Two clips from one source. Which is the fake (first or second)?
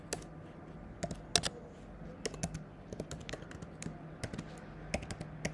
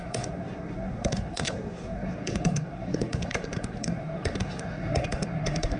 second